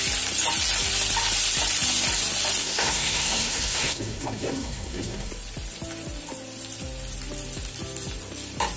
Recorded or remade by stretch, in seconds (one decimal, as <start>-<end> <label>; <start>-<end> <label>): 0.0-2.6 recorded; 2.6-5.3 remade; 5.3-8.8 recorded